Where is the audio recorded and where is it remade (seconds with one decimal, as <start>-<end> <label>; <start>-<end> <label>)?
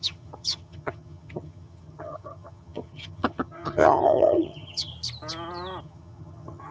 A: 0.0-4.9 remade; 4.9-5.8 recorded; 5.8-6.7 remade